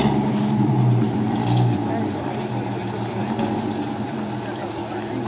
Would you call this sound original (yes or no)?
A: no